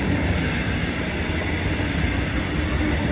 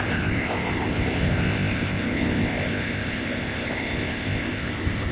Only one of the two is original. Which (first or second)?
first